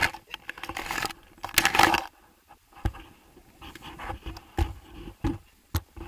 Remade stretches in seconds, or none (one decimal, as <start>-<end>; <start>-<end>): none